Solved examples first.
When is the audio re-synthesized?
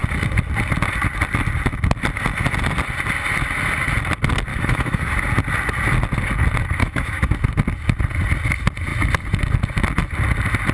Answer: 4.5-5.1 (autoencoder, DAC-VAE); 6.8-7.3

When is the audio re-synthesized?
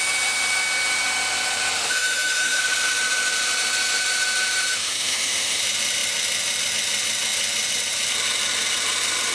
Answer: 1.8-2.6 (autoencoder, DAC-VAE); 4.7-5.6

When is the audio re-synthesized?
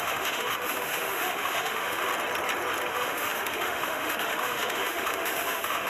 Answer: 0.0-2.1 (autoencoder, DAC-VAE); 2.9-5.9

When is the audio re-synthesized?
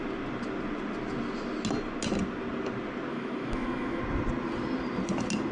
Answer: 3.1-4.0 (autoencoder, DAC-VAE)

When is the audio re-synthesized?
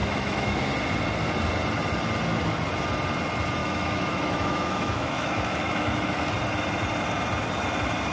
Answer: 0.0-0.6 (autoencoder, DAC-VAE); 3.6-6.2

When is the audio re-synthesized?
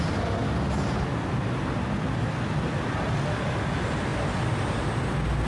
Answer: none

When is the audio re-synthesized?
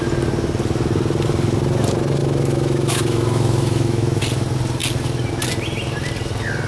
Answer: 2.2-4.2 (autoencoder, DAC-VAE)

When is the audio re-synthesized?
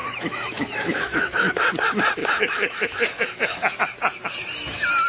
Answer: 0.0-1.7 (autoencoder, DAC-VAE); 2.2-3.8